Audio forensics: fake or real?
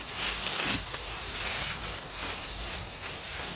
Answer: fake